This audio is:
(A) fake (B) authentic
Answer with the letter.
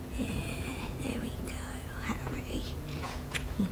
A